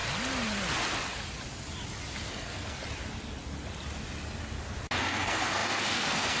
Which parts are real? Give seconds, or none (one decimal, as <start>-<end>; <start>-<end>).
0.0-2.3; 2.8-5.0